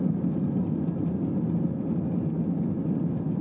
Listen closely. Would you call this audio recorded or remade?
recorded